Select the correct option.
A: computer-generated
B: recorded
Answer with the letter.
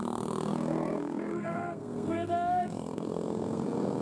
A